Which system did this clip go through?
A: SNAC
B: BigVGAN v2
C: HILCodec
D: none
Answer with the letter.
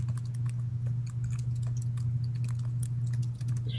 D